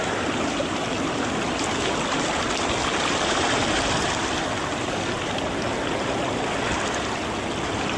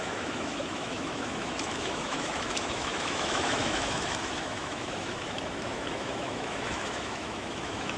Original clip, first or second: first